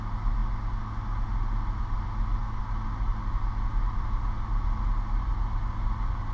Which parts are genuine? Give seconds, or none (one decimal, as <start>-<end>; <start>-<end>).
0.0-6.3